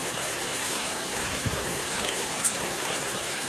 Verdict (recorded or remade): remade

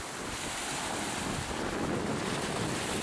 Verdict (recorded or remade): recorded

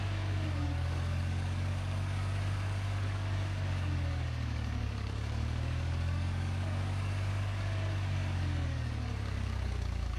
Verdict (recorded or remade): remade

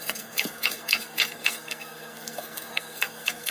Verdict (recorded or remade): remade